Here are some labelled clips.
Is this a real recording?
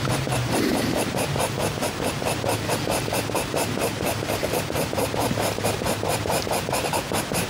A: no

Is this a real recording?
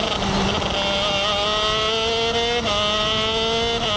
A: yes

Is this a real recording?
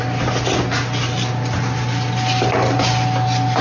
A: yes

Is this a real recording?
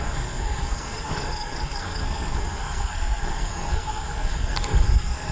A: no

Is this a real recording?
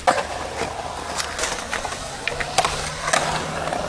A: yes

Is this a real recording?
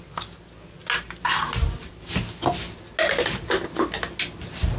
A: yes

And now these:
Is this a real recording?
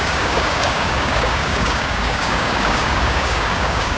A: no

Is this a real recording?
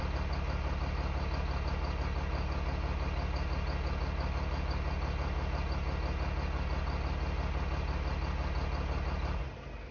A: yes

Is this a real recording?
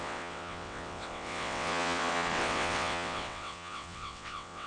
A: no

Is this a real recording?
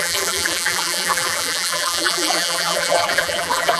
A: no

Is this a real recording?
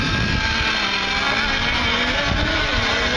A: yes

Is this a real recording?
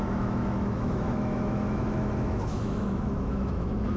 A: no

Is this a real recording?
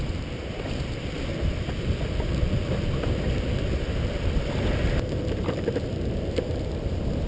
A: no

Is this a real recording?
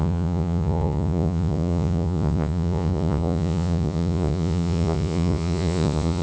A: no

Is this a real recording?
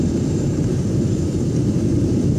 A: no